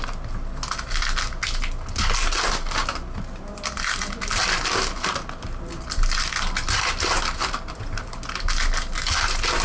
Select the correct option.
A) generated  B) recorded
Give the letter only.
B